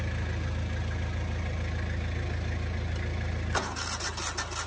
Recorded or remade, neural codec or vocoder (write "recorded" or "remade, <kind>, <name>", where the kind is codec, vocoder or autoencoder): recorded